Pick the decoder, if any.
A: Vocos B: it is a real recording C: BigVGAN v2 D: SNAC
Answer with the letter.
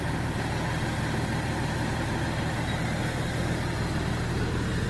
B